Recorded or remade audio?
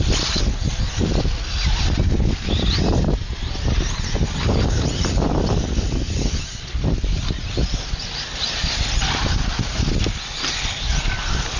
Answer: recorded